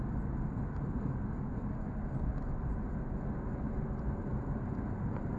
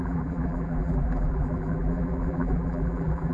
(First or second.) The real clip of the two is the first